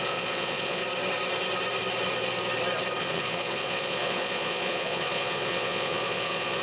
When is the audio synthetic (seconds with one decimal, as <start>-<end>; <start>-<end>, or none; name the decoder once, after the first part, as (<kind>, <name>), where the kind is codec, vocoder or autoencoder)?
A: 0.0-0.8 (vocoder, Vocos); 3.0-6.6